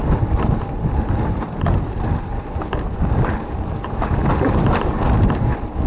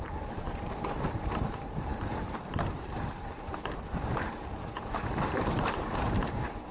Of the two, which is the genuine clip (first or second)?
first